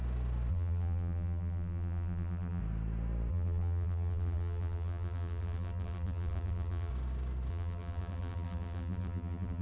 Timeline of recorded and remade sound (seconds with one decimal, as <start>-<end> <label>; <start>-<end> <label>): 0.0-0.5 recorded; 0.5-2.6 remade; 2.6-3.3 recorded; 3.3-6.9 remade; 6.9-7.5 recorded; 7.5-9.6 remade